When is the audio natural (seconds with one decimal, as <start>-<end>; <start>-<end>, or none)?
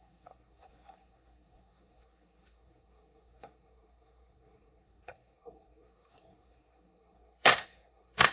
none